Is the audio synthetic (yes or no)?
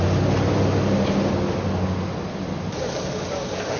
no